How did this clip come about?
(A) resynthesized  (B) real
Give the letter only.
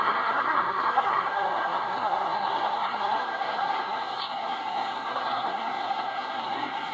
A